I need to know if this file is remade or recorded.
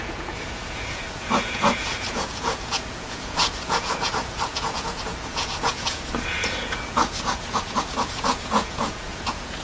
remade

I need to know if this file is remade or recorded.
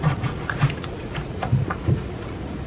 remade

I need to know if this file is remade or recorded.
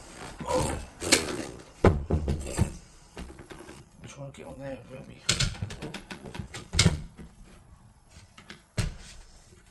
remade